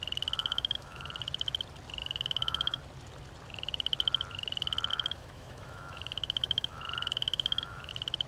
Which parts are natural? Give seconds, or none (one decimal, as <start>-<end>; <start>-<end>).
0.0-0.4; 1.1-2.0; 2.8-4.9; 7.9-8.3